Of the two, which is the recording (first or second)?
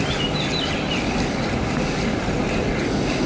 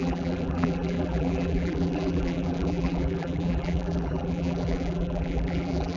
first